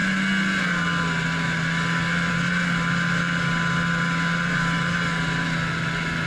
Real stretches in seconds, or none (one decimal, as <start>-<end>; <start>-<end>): 0.0-6.3